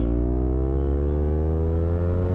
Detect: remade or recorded recorded